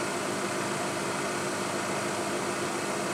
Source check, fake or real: real